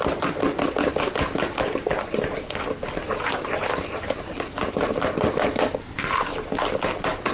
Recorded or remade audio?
recorded